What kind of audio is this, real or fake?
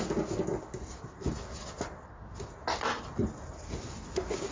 real